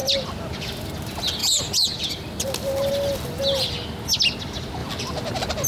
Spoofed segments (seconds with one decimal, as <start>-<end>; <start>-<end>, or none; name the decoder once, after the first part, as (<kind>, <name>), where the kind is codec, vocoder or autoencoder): 0.0-0.9 (vocoder, BigVGAN v2); 1.4-2.9; 4.8-5.7